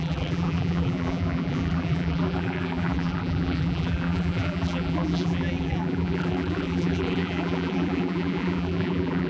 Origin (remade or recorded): remade